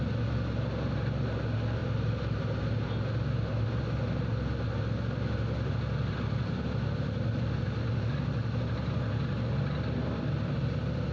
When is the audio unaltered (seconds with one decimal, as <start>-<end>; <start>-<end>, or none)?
0.0-11.1